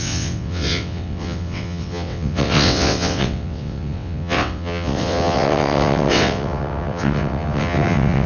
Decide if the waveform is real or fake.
fake